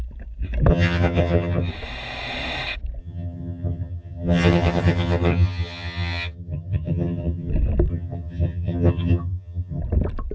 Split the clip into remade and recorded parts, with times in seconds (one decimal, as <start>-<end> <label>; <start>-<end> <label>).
0.0-0.7 recorded; 0.7-1.7 remade; 1.7-3.0 recorded; 3.0-7.5 remade; 7.5-7.9 recorded; 7.9-9.8 remade; 9.8-10.3 recorded